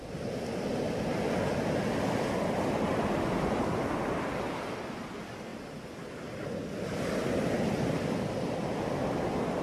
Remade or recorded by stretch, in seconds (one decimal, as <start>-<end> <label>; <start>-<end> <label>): 0.0-9.6 recorded